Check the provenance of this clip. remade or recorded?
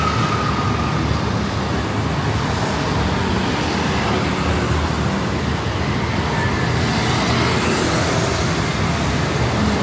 recorded